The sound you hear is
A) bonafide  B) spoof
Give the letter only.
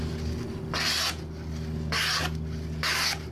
A